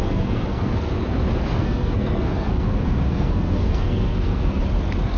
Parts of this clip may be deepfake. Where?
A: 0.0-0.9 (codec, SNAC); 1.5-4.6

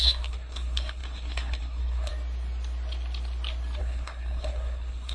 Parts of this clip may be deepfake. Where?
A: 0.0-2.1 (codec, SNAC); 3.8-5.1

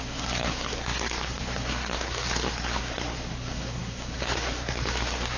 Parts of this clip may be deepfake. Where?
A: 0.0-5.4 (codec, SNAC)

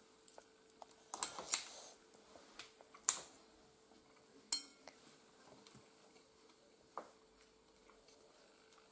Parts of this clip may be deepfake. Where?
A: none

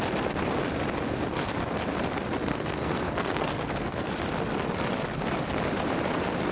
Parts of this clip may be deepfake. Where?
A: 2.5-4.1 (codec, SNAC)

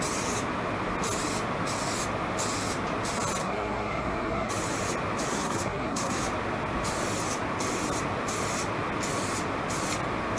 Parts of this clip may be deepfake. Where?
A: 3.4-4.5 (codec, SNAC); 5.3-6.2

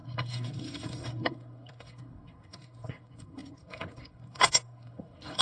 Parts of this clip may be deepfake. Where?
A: 0.0-5.4 (codec, SNAC)

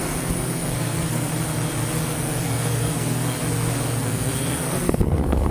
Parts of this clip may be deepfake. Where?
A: 0.0-1.3 (codec, SNAC); 2.0-3.4; 4.0-5.5